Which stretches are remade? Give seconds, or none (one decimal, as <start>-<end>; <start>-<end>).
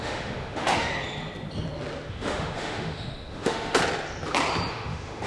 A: 0.0-0.9; 2.1-3.8; 4.7-5.3